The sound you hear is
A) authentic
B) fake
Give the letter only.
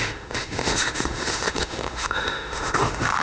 B